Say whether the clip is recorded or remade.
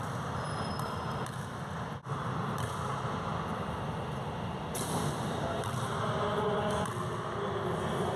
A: recorded